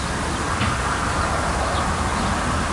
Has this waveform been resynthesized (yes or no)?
no